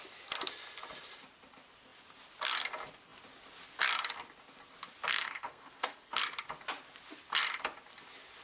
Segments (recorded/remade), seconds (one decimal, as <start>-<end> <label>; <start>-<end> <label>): 0.0-5.1 recorded; 5.1-6.2 remade; 6.2-8.4 recorded